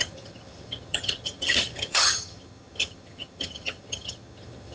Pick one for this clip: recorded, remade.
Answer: remade